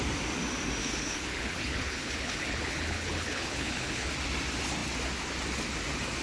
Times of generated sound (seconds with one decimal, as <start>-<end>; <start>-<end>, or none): 0.8-4.1